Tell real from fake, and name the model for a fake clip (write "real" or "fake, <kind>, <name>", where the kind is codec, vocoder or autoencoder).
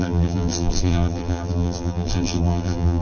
fake, vocoder, BigVGAN v2